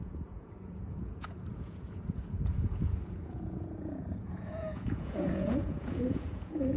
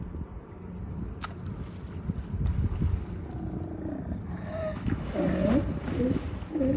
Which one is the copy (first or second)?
first